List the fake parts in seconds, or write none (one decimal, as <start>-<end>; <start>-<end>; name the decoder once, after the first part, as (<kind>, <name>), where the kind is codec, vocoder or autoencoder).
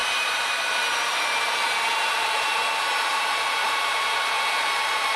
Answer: 0.0-2.6 (vocoder, BigVGAN v2); 3.1-5.2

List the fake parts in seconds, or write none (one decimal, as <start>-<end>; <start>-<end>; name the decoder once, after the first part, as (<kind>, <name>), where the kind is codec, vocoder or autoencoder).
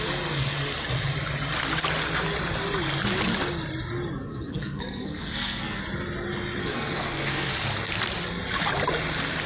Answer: 4.3-5.8 (codec, SNAC); 6.6-7.5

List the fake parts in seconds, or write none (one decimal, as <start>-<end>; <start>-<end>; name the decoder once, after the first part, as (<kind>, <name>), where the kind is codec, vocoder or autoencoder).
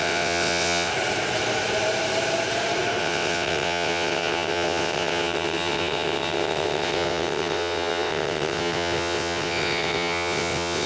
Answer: 0.0-0.9 (vocoder, WaveNeXt); 3.0-10.9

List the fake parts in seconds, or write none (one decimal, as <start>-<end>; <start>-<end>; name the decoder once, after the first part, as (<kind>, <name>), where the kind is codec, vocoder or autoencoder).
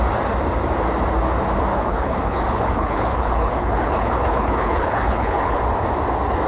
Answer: 1.7-5.6 (codec, HILCodec)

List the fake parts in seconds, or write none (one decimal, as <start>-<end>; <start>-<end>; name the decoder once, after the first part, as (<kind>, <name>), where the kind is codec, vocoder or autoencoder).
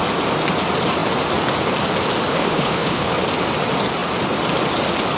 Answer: 2.3-3.1 (codec, HILCodec)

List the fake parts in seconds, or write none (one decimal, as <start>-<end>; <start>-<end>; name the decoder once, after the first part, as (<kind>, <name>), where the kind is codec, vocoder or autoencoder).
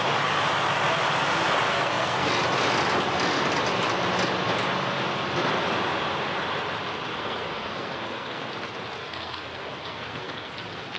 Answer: 1.7-2.3 (codec, SNAC); 7.1-8.5; 9.0-11.0